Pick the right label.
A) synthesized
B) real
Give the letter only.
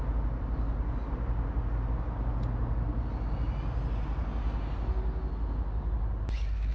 B